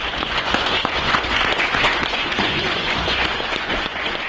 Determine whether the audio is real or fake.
fake